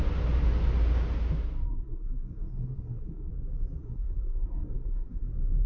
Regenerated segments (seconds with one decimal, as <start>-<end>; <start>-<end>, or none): 1.7-3.3; 3.8-5.3